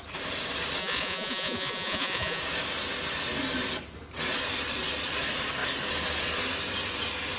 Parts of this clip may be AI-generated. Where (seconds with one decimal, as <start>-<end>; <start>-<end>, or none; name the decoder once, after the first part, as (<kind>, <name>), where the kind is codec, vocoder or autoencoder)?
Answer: 0.8-2.4 (vocoder, Vocos)